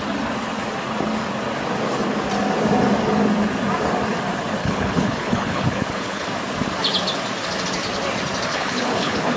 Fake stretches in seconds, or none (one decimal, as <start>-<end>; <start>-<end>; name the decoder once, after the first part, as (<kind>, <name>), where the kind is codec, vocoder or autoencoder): 4.6-6.3 (codec, HILCodec); 8.5-9.4